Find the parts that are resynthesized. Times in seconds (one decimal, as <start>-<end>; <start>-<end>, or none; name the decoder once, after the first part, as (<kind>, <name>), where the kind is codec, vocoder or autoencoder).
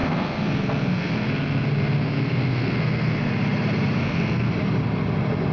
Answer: 0.0-3.3 (codec, SNAC); 4.0-4.5